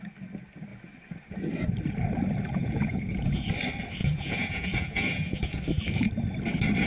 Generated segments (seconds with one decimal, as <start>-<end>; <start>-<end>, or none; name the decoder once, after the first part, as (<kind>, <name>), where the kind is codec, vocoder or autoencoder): 2.6-3.5 (vocoder, Vocos); 4.0-5.6